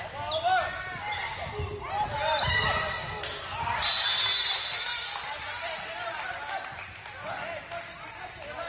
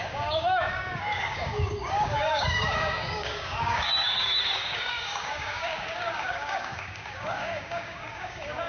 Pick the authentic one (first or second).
first